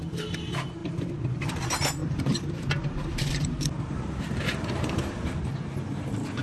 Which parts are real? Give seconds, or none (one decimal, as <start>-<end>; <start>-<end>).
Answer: 0.0-2.0; 5.4-6.4